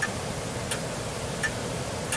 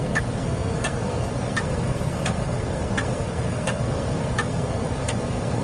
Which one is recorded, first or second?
first